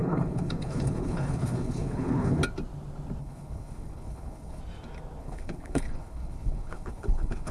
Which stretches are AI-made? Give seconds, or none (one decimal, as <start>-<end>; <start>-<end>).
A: 0.0-2.4; 3.2-4.6; 5.2-7.5